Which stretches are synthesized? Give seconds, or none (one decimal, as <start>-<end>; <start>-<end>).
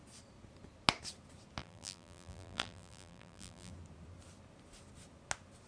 1.6-3.7